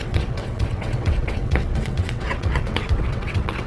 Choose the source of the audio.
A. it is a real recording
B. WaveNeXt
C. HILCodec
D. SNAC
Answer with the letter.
B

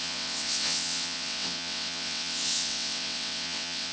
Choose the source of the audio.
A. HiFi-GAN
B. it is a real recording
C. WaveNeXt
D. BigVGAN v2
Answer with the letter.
C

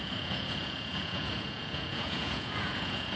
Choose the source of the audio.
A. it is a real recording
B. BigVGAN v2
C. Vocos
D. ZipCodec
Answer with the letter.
C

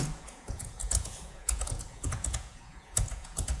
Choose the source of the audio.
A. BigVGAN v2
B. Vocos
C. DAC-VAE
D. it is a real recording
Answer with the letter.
B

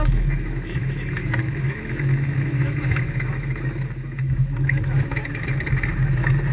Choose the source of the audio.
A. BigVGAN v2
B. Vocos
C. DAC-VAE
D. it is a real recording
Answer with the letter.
C